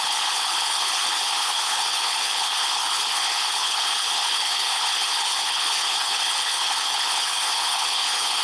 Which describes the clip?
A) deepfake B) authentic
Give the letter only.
A